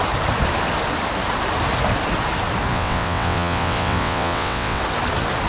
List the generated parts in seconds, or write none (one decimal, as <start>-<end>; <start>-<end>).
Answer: 2.7-4.8